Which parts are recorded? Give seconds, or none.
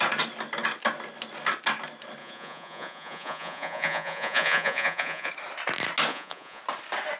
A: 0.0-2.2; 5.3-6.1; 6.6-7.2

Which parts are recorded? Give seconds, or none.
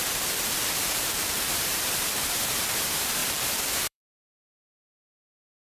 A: none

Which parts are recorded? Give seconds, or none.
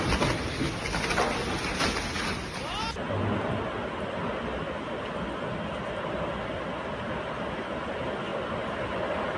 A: 0.0-9.4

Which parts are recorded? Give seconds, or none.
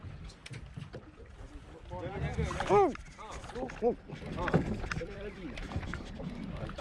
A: 0.4-4.5